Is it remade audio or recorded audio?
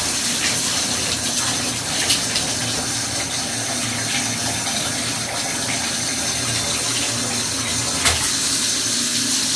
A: recorded